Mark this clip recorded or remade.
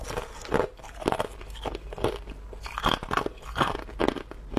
recorded